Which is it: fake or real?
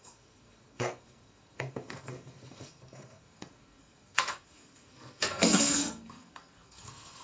fake